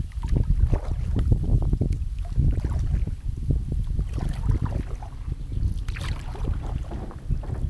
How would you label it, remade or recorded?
recorded